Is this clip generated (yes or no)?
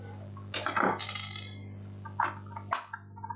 no